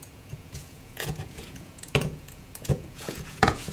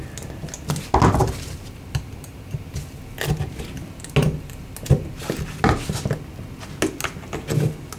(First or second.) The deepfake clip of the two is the first